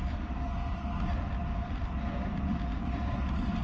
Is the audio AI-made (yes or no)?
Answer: no